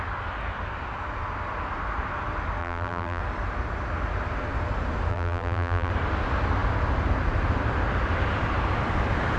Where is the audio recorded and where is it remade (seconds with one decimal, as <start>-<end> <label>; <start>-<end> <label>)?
0.0-2.6 recorded; 2.6-3.2 remade; 3.2-5.1 recorded; 5.1-5.9 remade; 5.9-9.4 recorded